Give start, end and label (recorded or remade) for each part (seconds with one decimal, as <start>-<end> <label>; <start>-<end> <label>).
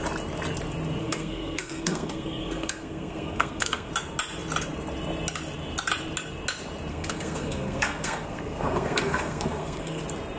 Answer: 0.0-1.0 recorded; 1.0-3.9 remade; 3.9-6.9 recorded; 6.9-10.0 remade; 10.0-10.4 recorded